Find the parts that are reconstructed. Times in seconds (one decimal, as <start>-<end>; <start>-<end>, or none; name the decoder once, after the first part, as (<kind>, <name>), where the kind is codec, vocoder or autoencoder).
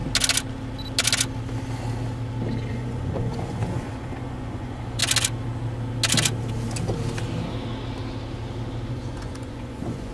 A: 2.7-5.0 (vocoder, Vocos); 8.9-10.1